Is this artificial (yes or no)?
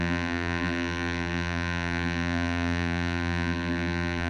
yes